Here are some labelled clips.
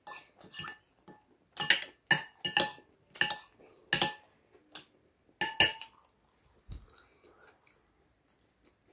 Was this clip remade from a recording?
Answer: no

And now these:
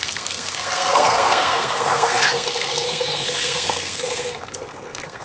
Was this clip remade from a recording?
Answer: yes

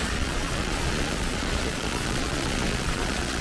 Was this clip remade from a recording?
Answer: yes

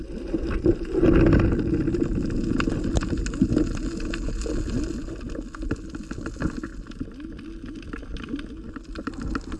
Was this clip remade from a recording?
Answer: no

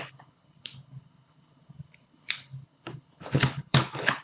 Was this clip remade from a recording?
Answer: yes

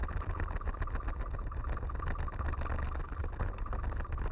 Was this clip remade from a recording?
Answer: no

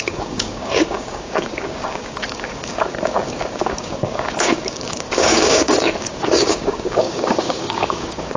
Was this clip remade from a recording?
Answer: yes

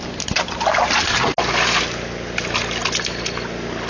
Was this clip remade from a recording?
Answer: no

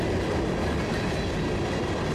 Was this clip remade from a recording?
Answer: no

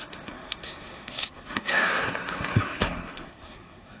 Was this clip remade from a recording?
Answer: yes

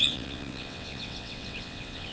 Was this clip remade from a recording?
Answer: yes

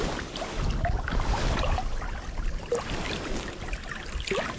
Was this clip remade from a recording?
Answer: no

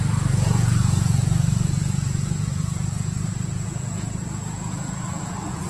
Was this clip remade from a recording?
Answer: yes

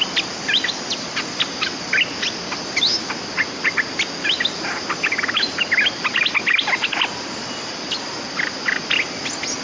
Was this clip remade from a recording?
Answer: no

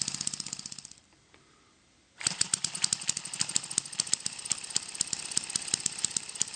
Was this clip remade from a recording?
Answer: yes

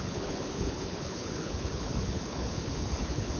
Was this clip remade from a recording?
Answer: yes